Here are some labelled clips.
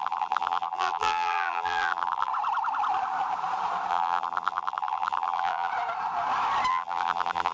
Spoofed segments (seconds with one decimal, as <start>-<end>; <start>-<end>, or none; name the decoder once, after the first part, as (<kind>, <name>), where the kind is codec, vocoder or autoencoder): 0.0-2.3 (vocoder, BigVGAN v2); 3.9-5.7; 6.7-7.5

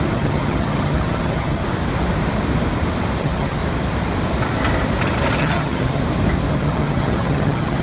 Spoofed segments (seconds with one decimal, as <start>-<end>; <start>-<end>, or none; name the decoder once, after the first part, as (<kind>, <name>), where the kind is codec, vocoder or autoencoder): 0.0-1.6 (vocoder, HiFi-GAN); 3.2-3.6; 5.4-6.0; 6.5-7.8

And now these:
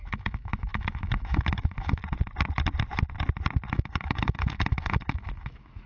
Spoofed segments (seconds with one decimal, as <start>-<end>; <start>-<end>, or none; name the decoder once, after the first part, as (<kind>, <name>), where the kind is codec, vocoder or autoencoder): 0.0-2.0 (autoencoder, DAC-VAE); 3.7-5.9